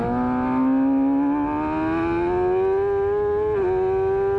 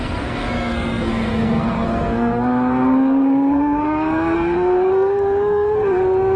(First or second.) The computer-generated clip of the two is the second